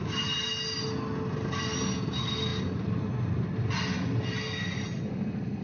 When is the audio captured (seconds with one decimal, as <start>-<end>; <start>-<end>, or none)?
0.0-5.6